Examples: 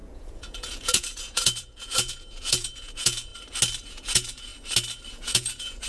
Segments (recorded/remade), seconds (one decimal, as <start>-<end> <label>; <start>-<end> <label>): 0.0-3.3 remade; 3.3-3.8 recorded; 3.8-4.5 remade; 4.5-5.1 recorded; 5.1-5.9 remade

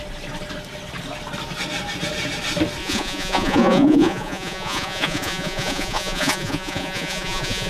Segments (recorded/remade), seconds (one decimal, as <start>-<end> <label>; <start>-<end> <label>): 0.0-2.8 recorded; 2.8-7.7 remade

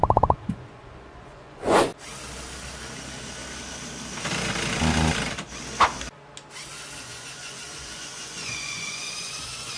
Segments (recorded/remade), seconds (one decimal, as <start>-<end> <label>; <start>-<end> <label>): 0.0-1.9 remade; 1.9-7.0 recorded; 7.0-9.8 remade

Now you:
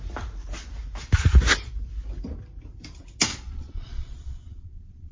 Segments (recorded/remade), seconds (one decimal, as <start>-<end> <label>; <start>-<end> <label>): 0.0-3.3 recorded; 3.3-5.1 remade

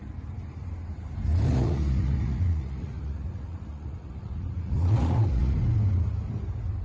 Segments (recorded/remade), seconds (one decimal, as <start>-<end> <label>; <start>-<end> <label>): 0.0-1.5 recorded; 1.5-5.6 remade; 5.6-6.8 recorded

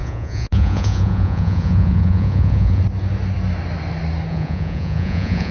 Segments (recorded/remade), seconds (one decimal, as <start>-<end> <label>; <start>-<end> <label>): 0.0-2.8 remade; 2.8-4.3 recorded; 4.3-5.5 remade

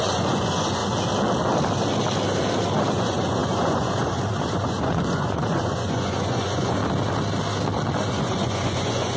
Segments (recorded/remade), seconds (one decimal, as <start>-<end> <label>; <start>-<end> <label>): 0.0-0.8 remade; 0.8-2.9 recorded; 2.9-6.8 remade; 6.8-8.1 recorded; 8.1-9.2 remade